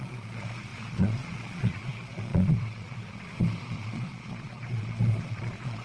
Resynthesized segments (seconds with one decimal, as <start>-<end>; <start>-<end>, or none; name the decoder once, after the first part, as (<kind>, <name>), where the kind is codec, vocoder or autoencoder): 0.0-5.8 (vocoder, Vocos)